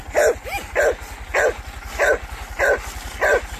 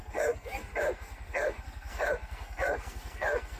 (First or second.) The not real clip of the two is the second